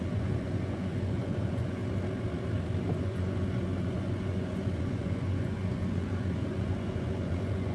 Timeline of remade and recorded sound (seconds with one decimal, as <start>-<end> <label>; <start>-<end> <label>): 0.0-1.8 remade; 1.8-2.9 recorded; 2.9-7.7 remade